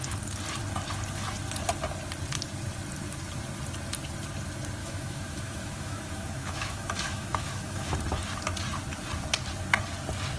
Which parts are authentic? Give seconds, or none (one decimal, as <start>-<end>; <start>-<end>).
0.0-4.8; 7.9-10.4